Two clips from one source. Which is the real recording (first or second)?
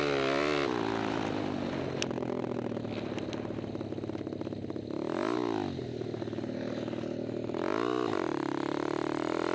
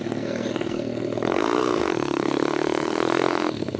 first